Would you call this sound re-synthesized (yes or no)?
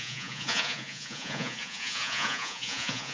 yes